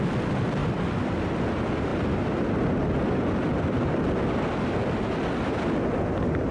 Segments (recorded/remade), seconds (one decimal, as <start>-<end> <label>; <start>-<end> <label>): 0.0-0.6 recorded; 0.6-1.2 remade; 1.2-6.5 recorded